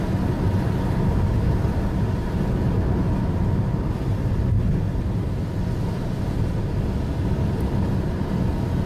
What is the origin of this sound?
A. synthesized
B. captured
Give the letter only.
B